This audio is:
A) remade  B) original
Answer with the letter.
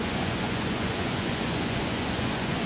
A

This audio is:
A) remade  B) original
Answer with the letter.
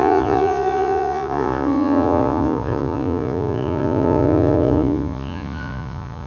A